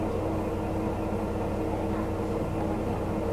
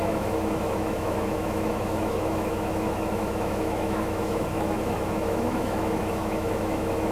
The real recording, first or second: first